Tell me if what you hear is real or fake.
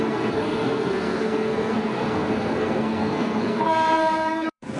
fake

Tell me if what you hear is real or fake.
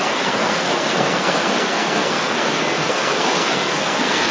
fake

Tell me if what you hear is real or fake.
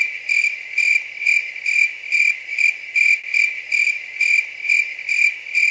real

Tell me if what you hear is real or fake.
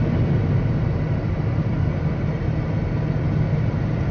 real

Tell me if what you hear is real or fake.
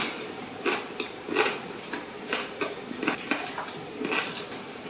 real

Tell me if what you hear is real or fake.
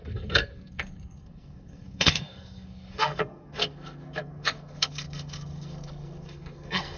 fake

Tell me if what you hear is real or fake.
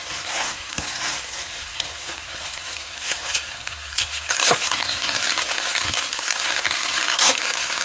fake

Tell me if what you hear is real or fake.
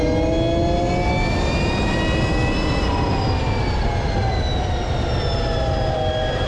real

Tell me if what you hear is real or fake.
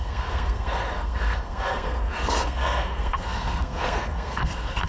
fake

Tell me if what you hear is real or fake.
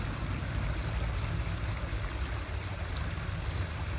real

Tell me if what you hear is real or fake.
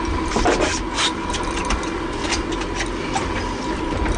real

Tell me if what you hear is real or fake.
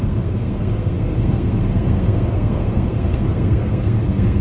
fake